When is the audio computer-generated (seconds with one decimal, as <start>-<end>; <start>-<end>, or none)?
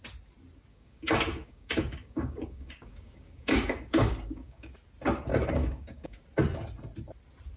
0.7-4.7; 5.3-6.2